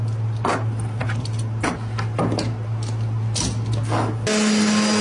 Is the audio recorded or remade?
recorded